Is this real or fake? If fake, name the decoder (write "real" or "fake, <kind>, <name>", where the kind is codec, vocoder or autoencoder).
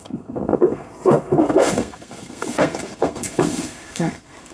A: fake, codec, SNAC